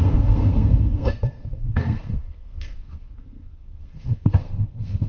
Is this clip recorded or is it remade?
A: remade